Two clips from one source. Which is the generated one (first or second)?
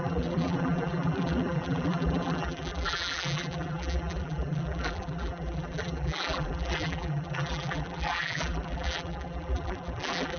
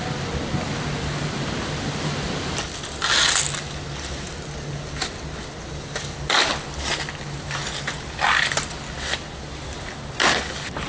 first